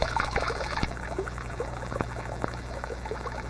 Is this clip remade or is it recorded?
remade